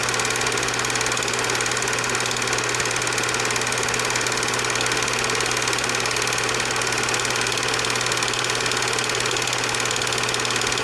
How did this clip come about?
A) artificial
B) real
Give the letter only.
B